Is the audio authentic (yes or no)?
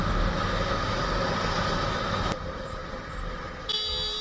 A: yes